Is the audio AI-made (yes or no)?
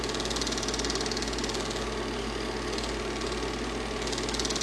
no